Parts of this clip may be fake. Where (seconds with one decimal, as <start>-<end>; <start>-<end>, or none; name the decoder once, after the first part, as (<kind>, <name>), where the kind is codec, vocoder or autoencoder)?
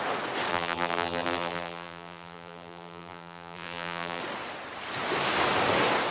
0.5-4.2 (vocoder, BigVGAN v2)